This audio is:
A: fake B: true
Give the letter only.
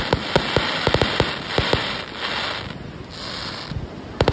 B